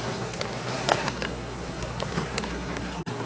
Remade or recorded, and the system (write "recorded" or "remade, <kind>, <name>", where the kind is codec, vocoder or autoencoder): remade, codec, SNAC